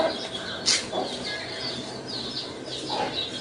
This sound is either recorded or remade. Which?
recorded